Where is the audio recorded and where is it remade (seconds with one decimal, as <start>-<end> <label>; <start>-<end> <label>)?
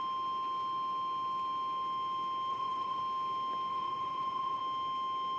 0.0-2.5 recorded; 2.5-3.0 remade; 3.0-3.7 recorded; 3.7-4.6 remade; 4.6-5.4 recorded